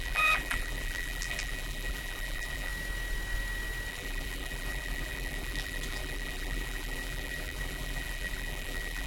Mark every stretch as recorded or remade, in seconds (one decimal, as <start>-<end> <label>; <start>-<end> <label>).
0.0-2.7 remade; 2.7-3.9 recorded; 3.9-9.1 remade